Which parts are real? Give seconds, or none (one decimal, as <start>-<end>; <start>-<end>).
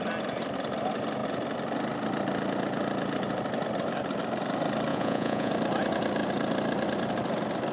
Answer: 0.0-4.9; 5.5-7.7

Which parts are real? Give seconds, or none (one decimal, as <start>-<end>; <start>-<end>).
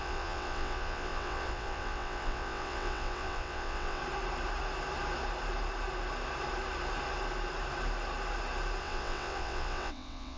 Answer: 4.0-8.8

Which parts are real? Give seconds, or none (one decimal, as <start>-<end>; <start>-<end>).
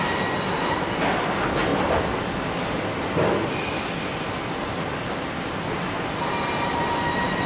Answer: 0.0-7.5